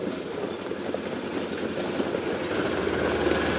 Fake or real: real